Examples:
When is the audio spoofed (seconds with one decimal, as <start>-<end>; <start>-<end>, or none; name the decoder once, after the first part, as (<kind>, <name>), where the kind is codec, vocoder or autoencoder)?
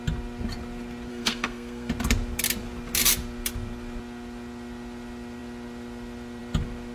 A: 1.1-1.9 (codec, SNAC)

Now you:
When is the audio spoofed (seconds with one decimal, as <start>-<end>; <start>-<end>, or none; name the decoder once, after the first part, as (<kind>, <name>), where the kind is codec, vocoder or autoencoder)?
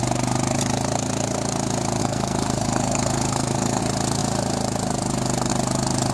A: 2.0-3.8 (codec, SNAC)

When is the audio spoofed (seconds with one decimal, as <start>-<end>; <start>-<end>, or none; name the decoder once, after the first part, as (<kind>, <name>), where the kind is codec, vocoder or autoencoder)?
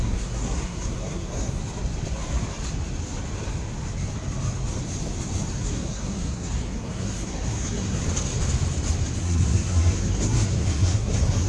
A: 0.0-1.6 (codec, SNAC); 5.6-8.0; 9.2-11.5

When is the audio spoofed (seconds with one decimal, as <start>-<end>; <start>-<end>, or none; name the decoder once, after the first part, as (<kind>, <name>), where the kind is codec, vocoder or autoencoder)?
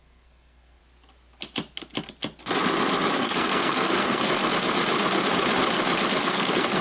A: 0.0-0.8 (codec, SNAC); 3.1-4.3; 6.2-6.8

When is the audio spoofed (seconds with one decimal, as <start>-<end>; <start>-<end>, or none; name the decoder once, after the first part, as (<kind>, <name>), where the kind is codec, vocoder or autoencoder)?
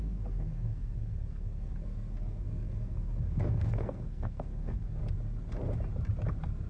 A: 0.0-5.0 (codec, SNAC)